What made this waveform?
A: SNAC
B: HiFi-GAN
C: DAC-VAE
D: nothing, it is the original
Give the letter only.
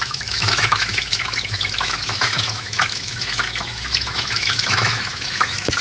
C